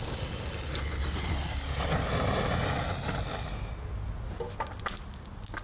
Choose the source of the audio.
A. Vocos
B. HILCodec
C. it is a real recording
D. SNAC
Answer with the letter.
C